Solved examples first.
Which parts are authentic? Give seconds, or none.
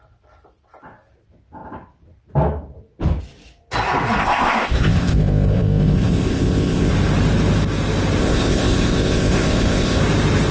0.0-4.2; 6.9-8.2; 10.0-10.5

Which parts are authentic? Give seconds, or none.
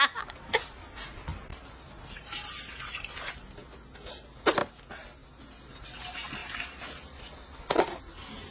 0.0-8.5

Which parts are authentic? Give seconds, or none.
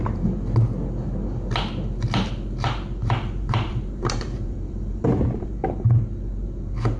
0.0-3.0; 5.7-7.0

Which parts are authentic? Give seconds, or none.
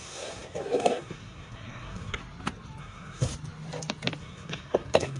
2.2-2.8; 3.3-4.2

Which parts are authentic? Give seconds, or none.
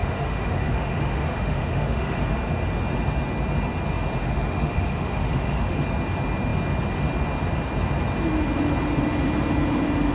2.2-4.2; 5.8-10.1